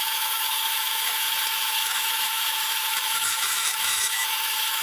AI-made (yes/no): yes